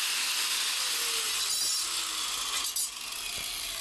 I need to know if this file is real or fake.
real